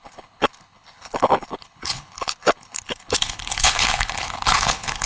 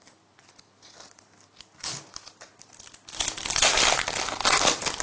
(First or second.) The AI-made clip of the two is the first